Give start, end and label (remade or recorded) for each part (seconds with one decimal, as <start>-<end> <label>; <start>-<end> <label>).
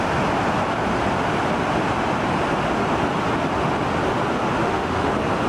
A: 0.0-4.6 recorded; 4.6-5.1 remade; 5.1-5.5 recorded